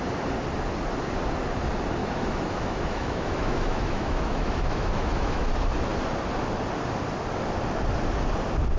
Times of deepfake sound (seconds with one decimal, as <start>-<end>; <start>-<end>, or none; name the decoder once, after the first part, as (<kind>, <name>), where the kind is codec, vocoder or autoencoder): 2.0-5.5 (autoencoder, DAC-VAE)